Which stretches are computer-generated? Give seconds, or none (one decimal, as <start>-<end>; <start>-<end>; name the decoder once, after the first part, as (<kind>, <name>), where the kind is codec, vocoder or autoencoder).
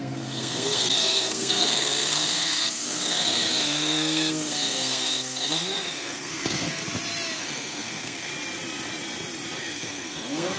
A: 0.0-6.8 (codec, SNAC); 7.4-8.3; 9.6-10.6